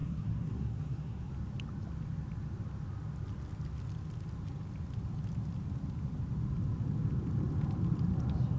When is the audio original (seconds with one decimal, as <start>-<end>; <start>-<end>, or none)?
1.3-8.6

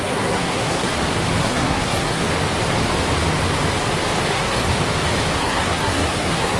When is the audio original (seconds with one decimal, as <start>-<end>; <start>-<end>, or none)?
0.9-1.4; 2.2-4.3; 4.7-5.4

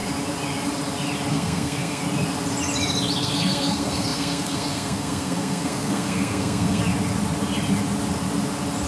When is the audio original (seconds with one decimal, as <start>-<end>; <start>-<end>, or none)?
0.0-1.3; 2.0-3.2; 6.8-8.9

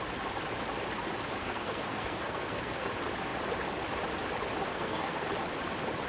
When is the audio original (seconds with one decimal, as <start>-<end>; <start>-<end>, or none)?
0.0-1.4; 2.9-4.7; 5.3-6.1

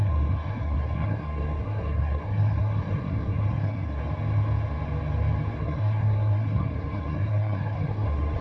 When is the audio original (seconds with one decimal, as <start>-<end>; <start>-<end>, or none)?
4.0-5.6